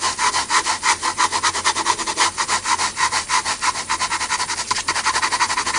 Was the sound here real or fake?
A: real